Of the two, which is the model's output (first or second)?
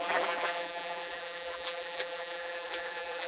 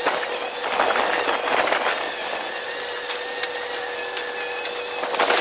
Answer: first